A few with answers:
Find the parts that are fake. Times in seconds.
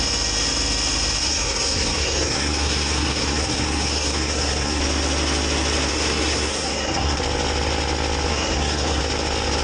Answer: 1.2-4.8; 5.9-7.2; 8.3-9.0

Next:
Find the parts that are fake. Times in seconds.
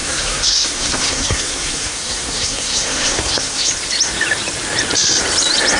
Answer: 0.0-3.7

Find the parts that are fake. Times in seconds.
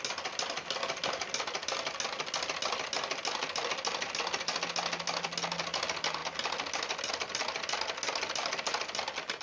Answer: none